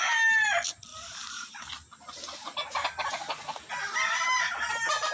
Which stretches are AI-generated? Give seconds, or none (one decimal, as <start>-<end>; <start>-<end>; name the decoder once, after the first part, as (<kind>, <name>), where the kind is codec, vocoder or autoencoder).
0.9-3.1 (vocoder, BigVGAN v2)